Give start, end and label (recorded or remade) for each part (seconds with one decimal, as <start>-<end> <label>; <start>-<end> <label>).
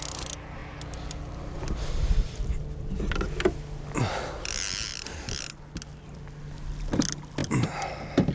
0.0-8.3 recorded